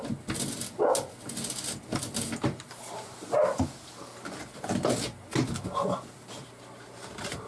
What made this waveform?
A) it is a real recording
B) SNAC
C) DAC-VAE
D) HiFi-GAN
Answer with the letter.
A